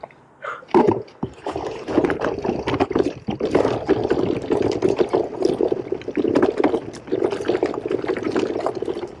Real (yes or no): yes